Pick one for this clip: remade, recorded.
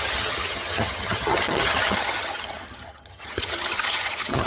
remade